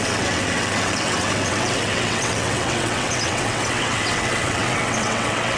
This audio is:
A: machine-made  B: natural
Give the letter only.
A